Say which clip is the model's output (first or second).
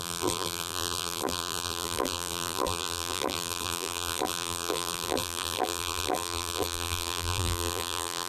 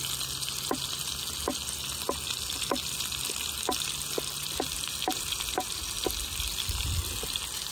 first